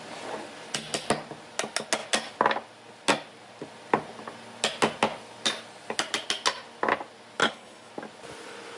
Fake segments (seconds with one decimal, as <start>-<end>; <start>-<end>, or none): 7.4-7.9